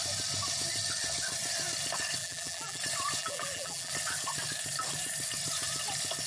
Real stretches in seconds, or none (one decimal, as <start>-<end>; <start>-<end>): 0.0-2.2; 2.8-3.2; 3.9-6.3